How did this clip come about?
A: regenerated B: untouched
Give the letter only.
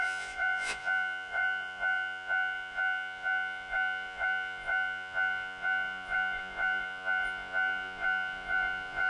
A